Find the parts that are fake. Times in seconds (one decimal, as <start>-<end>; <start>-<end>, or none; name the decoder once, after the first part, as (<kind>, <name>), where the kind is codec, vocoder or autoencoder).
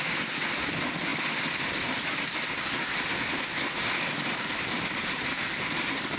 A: none